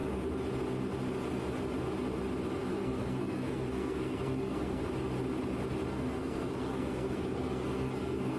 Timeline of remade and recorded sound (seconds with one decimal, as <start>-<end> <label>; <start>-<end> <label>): 0.0-2.7 recorded; 2.7-4.8 remade; 4.8-5.9 recorded; 5.9-8.4 remade